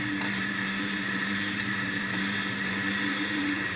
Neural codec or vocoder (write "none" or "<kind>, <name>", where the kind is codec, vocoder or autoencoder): vocoder, BigVGAN v2